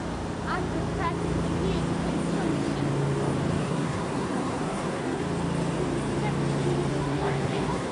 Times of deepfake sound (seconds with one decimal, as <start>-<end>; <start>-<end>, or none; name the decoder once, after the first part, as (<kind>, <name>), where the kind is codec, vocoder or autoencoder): 3.6-5.2 (codec, SNAC); 6.9-7.9